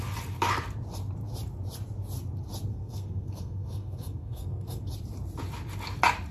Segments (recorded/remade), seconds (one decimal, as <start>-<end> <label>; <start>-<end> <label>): 0.0-2.7 recorded; 2.7-4.9 remade; 4.9-6.3 recorded